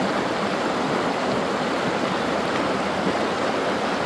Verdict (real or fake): real